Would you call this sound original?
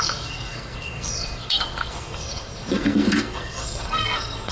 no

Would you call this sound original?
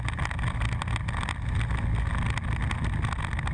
yes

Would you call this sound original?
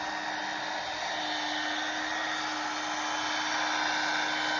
yes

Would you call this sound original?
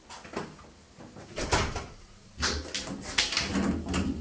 yes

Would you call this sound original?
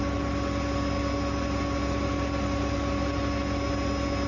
yes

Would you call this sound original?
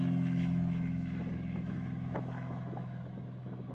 no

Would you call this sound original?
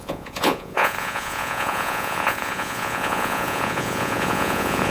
no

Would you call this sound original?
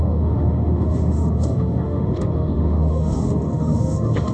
no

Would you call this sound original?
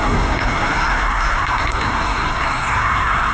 no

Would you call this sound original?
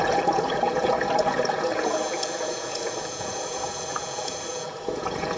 no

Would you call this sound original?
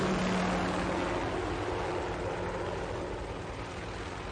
yes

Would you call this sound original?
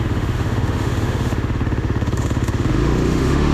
no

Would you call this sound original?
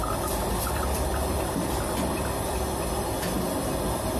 yes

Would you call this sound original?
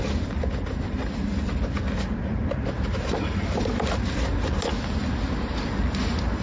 yes